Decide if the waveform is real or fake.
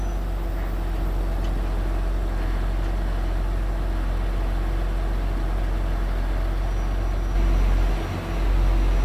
real